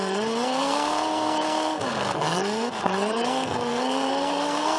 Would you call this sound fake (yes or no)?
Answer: yes